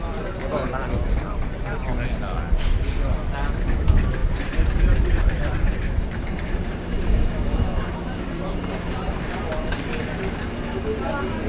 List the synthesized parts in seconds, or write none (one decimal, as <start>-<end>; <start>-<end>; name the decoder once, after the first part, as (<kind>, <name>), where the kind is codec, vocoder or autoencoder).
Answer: 4.2-9.2 (vocoder, BigVGAN v2)